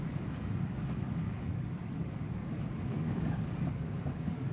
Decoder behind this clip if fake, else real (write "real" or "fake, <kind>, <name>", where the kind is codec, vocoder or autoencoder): fake, codec, DAC